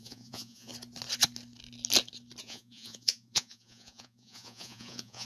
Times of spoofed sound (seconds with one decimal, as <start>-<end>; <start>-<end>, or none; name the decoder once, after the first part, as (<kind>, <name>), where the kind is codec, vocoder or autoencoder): 0.0-0.7 (vocoder, Vocos); 2.4-5.3